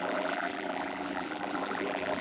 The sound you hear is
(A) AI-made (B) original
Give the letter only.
A